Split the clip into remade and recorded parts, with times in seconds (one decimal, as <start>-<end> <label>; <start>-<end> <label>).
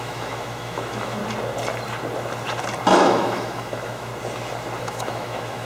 0.0-1.2 remade; 1.2-3.0 recorded; 3.0-4.1 remade; 4.1-4.8 recorded; 4.8-5.6 remade